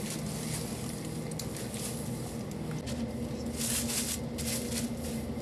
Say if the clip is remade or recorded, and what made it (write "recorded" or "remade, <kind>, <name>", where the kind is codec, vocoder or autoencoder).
recorded